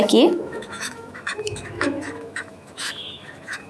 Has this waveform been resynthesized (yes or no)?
yes